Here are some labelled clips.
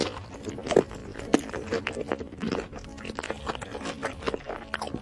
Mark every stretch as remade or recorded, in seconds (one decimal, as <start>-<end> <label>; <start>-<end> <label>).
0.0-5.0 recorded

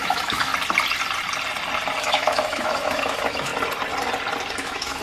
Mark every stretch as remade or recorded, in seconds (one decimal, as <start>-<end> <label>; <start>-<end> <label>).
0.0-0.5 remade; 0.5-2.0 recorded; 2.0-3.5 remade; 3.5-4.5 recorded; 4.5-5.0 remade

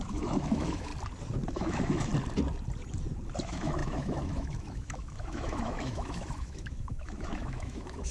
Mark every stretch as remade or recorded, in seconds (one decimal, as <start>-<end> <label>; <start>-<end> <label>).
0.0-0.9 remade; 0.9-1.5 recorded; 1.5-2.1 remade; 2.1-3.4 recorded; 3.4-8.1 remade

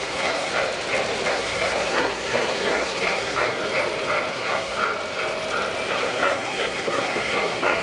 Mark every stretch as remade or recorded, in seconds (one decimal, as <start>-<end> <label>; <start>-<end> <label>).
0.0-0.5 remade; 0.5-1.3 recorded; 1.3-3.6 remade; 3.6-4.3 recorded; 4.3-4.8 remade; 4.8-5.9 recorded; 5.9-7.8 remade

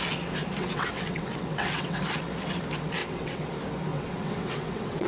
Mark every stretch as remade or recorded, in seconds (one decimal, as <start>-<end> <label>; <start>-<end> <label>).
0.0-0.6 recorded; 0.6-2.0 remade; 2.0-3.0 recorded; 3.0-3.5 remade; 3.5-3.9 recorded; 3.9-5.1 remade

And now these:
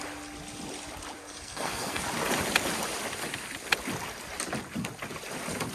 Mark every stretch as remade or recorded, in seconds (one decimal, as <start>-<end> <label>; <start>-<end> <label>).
0.0-1.2 recorded; 1.2-2.0 remade; 2.0-5.7 recorded

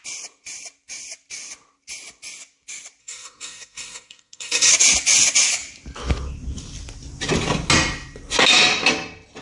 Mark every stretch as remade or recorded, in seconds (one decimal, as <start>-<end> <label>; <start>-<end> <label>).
0.0-3.0 recorded; 3.0-4.7 remade; 4.7-9.4 recorded